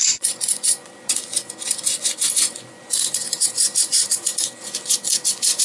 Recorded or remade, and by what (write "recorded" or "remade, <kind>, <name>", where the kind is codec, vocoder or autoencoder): remade, vocoder, Vocos